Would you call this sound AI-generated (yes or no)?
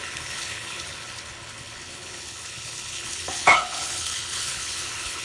yes